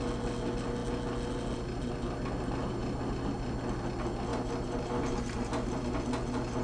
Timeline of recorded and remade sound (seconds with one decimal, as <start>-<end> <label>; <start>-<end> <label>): 0.0-4.3 recorded; 4.3-5.5 remade; 5.5-6.6 recorded